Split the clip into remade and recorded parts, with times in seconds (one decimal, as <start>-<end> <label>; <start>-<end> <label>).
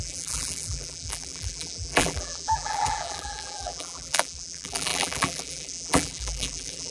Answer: 0.0-6.9 remade